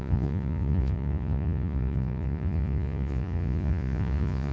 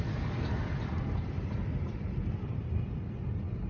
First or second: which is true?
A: second